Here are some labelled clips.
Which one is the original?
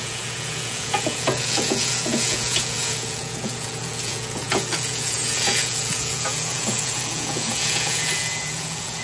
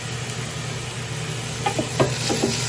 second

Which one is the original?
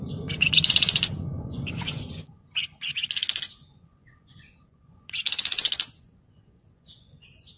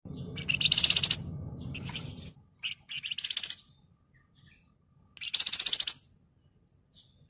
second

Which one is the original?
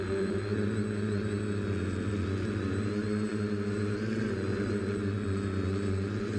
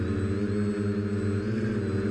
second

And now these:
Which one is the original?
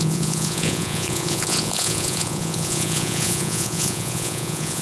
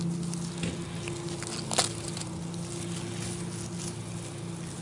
second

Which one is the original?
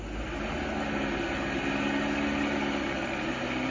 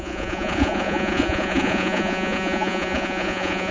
first